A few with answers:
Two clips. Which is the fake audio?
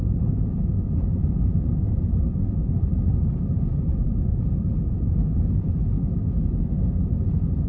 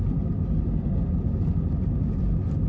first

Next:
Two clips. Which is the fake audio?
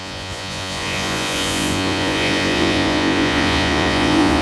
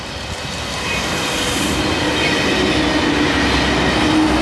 first